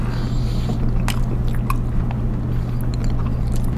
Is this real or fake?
real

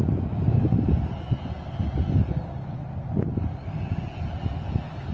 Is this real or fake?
real